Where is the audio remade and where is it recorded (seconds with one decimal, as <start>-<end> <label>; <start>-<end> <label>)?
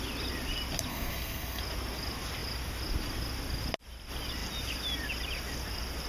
0.0-0.9 recorded; 0.9-1.6 remade; 1.6-6.1 recorded